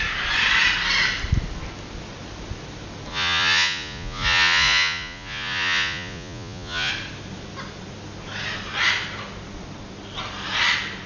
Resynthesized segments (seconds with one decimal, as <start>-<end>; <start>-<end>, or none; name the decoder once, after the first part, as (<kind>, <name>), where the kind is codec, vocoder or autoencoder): 3.1-6.9 (vocoder, Vocos)